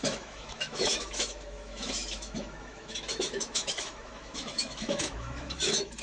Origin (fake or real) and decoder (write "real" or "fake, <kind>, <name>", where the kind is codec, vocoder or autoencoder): fake, autoencoder, DAC-VAE